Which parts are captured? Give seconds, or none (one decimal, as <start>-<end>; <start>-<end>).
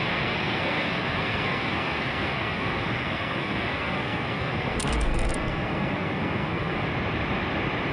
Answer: 6.9-7.9